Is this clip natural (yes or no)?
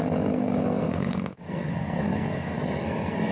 no